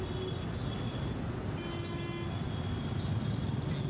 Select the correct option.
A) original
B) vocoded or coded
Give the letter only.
A